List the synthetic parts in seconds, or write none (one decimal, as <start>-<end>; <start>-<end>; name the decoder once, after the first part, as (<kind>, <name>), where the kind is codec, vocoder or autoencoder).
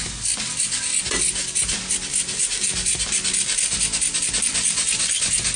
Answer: none